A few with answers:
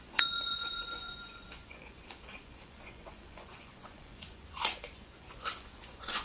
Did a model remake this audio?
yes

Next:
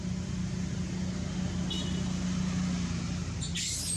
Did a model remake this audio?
no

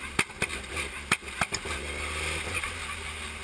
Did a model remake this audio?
no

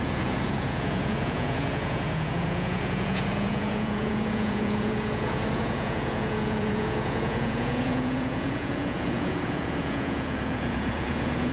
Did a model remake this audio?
yes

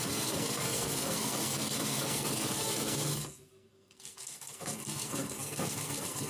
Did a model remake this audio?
yes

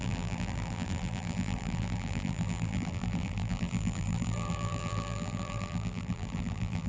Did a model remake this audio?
yes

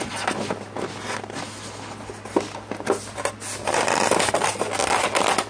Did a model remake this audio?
no